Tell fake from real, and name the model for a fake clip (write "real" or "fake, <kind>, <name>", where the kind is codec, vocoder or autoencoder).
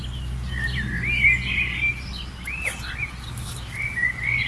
real